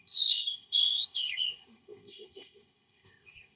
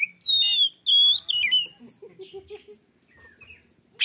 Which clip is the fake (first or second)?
first